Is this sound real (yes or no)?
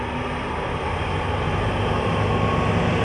yes